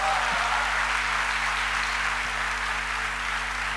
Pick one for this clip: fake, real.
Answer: real